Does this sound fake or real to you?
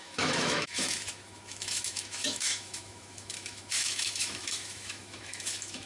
fake